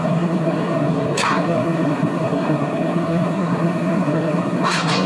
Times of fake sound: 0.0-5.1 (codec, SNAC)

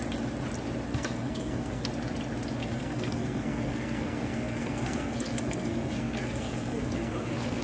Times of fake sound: 0.9-1.9 (codec, SNAC); 2.6-7.6

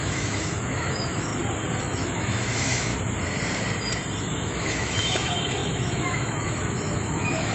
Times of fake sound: 0.0-1.3 (autoencoder, DAC-VAE); 1.8-2.9; 4.2-7.5

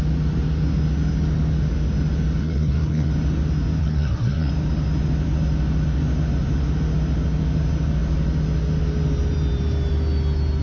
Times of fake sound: 2.4-3.1 (codec, SNAC); 3.8-4.5

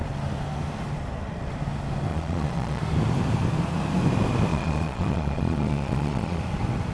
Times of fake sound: 2.1-2.8 (vocoder, Vocos); 4.5-6.4

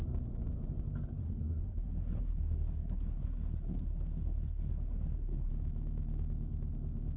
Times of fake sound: 1.2-5.5 (codec, SNAC)

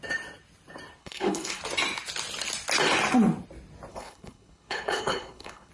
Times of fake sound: 1.0-1.6 (codec, HILCodec); 3.9-5.7

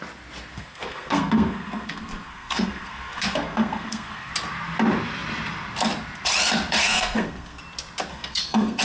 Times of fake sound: 0.5-4.3 (codec, SNAC); 6.8-7.6; 8.1-8.8